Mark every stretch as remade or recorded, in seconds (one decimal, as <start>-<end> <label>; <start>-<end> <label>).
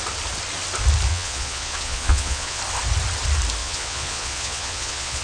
0.0-1.1 recorded; 1.1-2.6 remade; 2.6-3.6 recorded; 3.6-5.2 remade